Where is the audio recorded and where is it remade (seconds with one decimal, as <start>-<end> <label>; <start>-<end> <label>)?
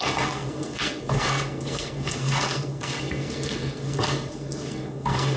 0.0-5.4 remade